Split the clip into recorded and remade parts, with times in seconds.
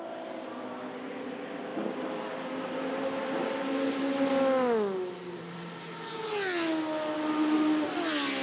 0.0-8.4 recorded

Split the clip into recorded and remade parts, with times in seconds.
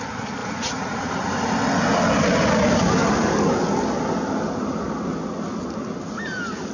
0.0-0.4 recorded; 0.4-1.3 remade; 1.3-6.7 recorded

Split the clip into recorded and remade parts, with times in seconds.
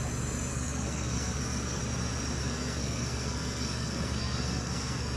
0.0-0.5 recorded; 0.5-1.8 remade; 1.8-2.4 recorded; 2.4-5.2 remade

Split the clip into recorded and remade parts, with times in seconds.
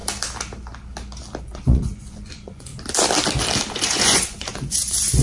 0.0-1.4 recorded; 1.4-2.7 remade; 2.7-3.7 recorded; 3.7-5.2 remade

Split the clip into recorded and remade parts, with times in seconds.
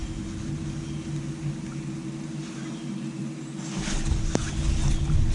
0.0-5.3 recorded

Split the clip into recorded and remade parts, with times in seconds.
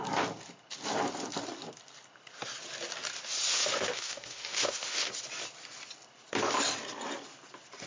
0.0-3.5 recorded; 3.5-5.1 remade; 5.1-7.9 recorded